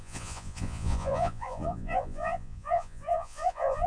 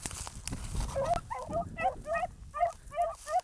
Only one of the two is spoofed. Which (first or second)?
first